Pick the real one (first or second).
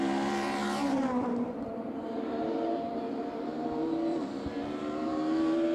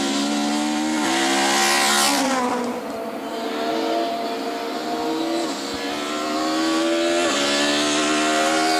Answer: second